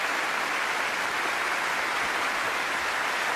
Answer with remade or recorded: recorded